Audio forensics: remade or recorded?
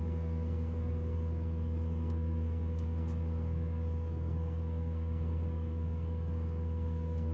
remade